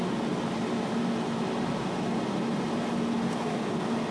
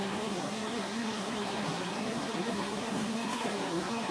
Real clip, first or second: first